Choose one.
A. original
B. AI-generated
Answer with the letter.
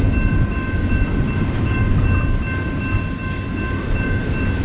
A